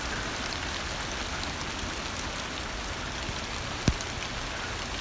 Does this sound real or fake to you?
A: real